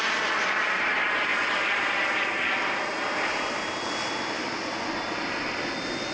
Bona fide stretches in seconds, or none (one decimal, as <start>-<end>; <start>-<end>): 0.0-6.1